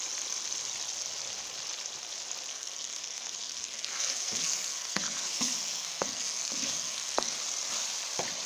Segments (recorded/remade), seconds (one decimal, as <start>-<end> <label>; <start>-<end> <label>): 0.0-2.5 recorded; 2.5-7.3 remade; 7.3-8.5 recorded